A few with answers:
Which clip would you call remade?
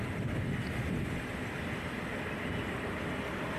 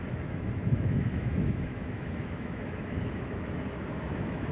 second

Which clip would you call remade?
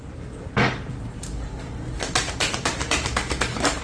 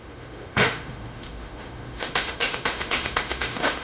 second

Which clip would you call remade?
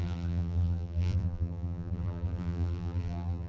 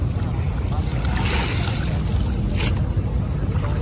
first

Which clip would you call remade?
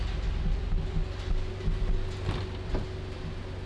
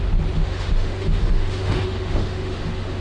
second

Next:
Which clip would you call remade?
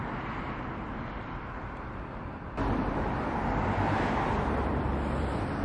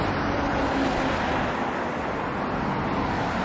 first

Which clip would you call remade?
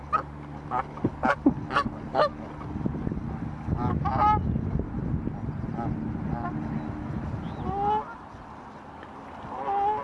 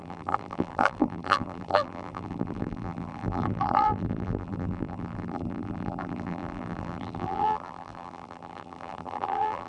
second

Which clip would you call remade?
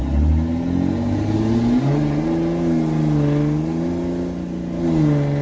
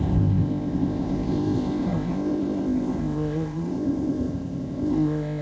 second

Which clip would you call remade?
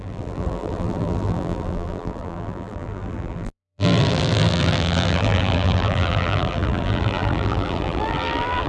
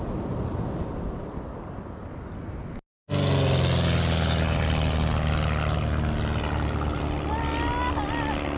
first